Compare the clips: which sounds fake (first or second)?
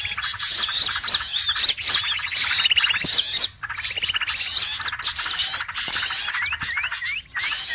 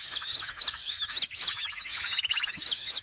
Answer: second